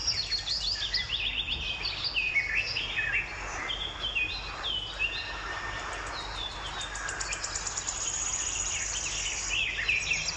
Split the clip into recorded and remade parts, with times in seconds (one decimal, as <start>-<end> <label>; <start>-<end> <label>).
0.0-10.4 recorded